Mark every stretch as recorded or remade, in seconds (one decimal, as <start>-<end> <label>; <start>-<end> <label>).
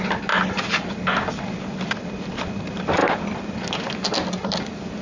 0.0-5.0 recorded